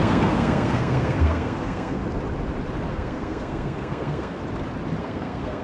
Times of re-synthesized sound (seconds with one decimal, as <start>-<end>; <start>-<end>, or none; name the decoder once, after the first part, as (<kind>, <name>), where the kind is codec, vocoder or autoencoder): 0.0-2.0 (codec, SNAC); 2.9-4.4; 5.0-5.6